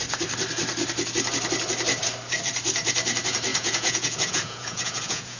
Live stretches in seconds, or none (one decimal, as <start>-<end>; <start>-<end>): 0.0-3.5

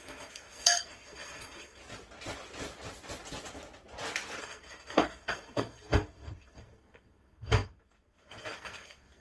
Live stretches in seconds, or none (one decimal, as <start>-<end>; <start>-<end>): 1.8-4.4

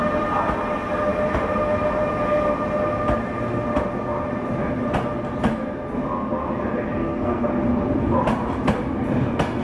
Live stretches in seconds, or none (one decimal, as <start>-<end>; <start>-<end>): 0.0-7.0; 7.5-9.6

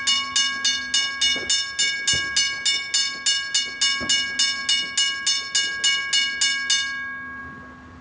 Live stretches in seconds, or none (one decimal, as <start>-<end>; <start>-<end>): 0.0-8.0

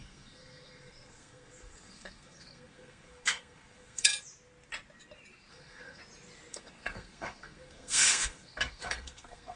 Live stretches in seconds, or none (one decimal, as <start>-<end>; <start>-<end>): 4.1-5.5; 6.0-6.5

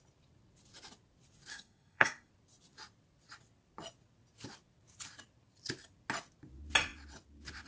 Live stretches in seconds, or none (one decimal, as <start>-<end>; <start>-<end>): 0.0-1.5; 2.3-7.7

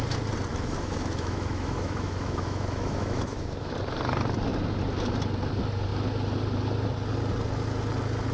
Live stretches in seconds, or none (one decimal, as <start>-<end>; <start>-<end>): 0.0-0.5; 3.7-8.3